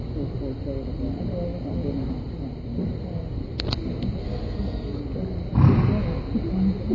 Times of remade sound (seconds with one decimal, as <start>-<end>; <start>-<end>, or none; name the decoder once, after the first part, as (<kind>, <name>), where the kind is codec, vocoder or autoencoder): 4.2-5.0 (codec, SNAC)